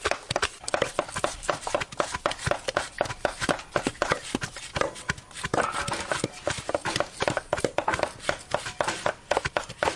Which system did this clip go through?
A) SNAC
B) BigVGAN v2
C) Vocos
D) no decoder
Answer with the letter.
D